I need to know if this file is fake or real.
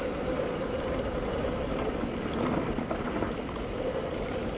real